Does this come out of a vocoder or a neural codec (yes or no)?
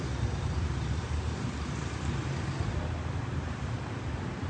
no